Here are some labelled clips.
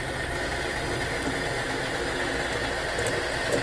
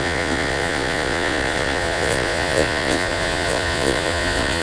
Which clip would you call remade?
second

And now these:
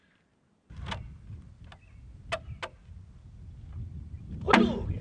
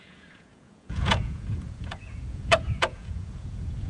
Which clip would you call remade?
second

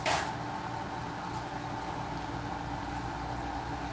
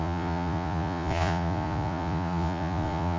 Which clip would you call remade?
second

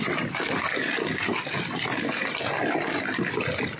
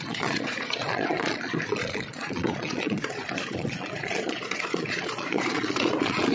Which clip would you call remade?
second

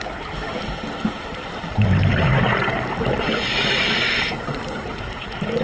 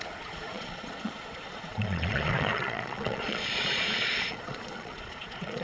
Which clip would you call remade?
second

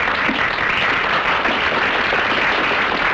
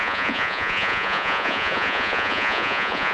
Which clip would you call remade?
second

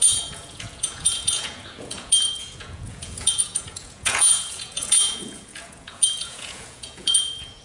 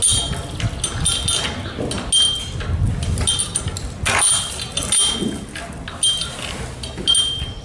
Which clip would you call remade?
first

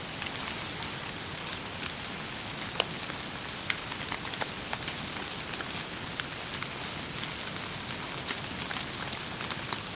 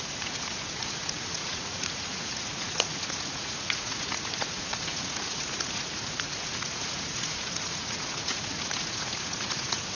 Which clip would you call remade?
second